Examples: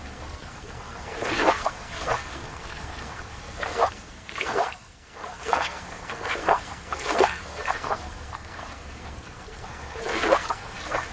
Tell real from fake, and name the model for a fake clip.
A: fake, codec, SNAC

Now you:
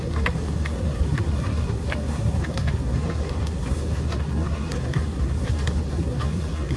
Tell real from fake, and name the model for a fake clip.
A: fake, codec, SNAC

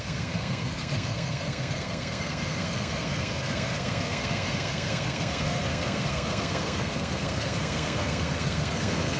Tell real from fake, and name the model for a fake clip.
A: fake, codec, SNAC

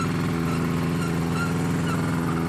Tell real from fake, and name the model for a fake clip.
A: real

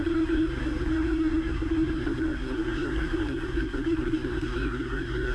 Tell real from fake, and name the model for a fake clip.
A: fake, codec, SNAC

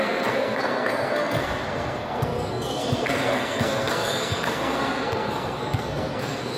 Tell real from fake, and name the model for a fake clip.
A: fake, codec, SNAC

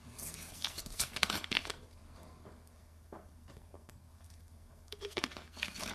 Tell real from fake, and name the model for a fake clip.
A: fake, codec, SNAC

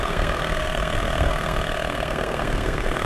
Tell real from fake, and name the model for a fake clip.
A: fake, codec, SNAC